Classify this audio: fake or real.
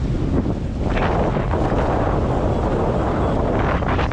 real